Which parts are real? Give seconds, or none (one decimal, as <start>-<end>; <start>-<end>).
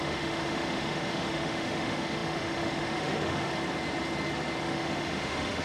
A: 3.5-4.6